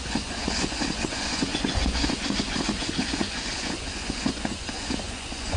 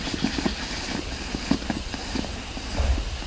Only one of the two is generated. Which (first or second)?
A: first